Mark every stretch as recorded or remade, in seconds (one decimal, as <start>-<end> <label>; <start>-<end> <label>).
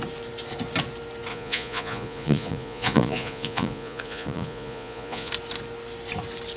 0.0-1.3 recorded; 1.3-5.3 remade; 5.3-6.6 recorded